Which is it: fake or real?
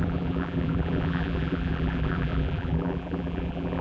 fake